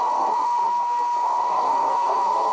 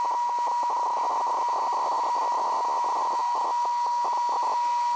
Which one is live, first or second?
second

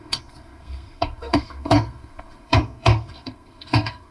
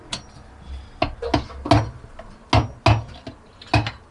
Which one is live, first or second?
second